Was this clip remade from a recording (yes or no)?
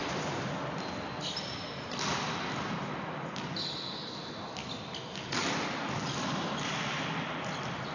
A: no